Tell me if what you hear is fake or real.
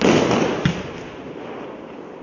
real